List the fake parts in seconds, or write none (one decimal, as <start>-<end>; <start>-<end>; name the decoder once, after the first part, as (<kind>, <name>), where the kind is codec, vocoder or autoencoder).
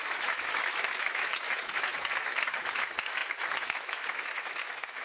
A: 0.0-5.0 (autoencoder, DAC-VAE)